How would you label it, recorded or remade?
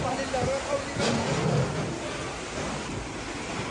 recorded